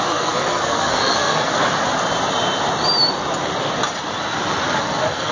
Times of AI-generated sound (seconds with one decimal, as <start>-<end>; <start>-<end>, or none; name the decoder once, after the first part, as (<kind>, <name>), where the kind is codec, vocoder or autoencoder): 0.0-1.6 (codec, SNAC); 4.8-5.3